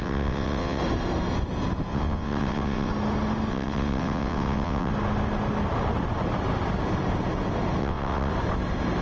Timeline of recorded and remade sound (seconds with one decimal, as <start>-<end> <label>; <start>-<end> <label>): 0.0-0.8 remade; 0.8-1.9 recorded; 1.9-2.9 remade; 2.9-3.5 recorded; 3.5-4.9 remade; 4.9-7.8 recorded; 7.8-8.3 remade; 8.3-9.0 recorded